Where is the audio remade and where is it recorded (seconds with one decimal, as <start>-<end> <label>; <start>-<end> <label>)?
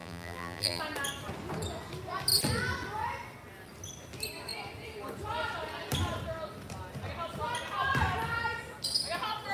0.0-0.8 remade; 0.8-9.5 recorded